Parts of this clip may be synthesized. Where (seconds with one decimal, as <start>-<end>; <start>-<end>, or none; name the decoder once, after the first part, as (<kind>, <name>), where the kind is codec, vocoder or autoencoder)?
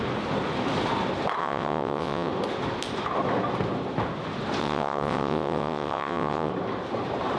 1.4-2.3 (vocoder, WaveNeXt); 4.6-6.5